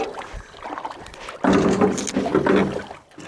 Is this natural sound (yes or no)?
yes